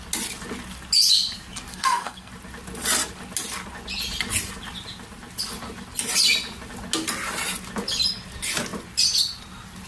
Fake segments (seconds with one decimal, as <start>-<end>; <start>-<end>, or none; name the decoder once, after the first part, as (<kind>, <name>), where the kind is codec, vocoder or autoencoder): 1.7-2.3 (codec, SNAC)